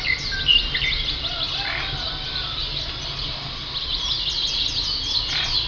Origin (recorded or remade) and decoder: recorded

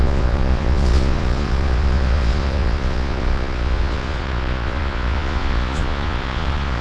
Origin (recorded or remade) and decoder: remade, vocoder, Vocos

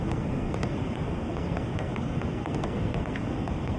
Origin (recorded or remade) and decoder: remade, codec, SNAC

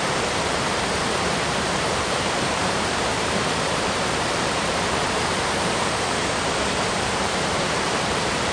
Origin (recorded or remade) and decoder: remade, vocoder, BigVGAN v2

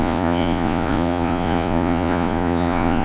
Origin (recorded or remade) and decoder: remade, vocoder, Vocos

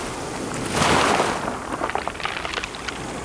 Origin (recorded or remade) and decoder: recorded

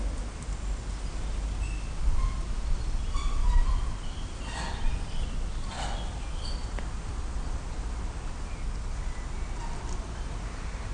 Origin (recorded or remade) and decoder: recorded